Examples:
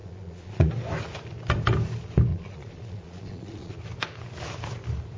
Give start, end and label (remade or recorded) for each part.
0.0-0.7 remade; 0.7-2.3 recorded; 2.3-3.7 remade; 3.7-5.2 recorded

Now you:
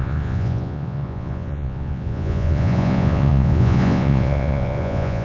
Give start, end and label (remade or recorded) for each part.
0.0-5.2 remade

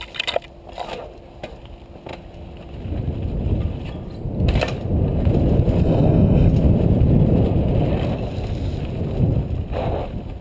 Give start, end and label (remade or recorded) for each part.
0.0-5.8 recorded; 5.8-6.5 remade; 6.5-10.4 recorded

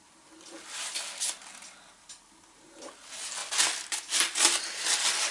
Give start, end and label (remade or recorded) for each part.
0.0-5.3 recorded